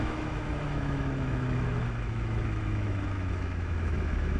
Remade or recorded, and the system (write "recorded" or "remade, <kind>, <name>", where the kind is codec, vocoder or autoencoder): remade, autoencoder, DAC-VAE